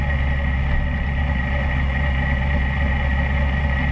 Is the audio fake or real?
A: real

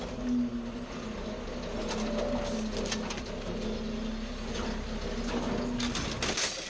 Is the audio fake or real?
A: real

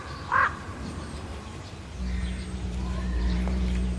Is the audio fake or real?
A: fake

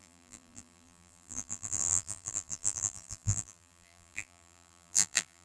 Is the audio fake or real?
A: fake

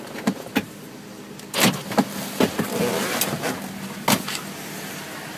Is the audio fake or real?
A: real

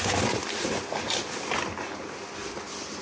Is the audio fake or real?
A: real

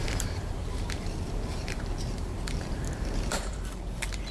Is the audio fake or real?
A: fake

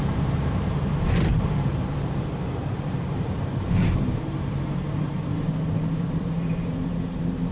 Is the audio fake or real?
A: fake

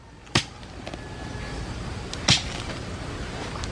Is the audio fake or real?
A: real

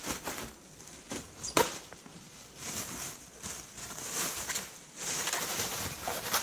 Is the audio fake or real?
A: fake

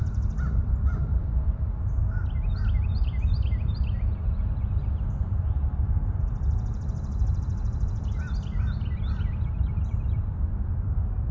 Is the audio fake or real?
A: fake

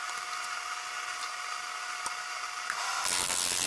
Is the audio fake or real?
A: real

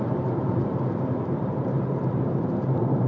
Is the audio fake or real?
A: fake